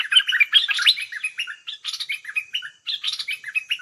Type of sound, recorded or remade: recorded